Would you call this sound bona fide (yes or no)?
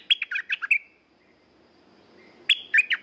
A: yes